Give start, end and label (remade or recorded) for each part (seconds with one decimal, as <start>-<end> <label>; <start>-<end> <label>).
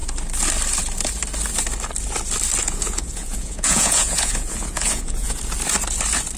0.0-2.6 recorded; 2.6-5.4 remade; 5.4-6.4 recorded